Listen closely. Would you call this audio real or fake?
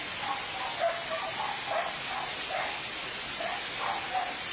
real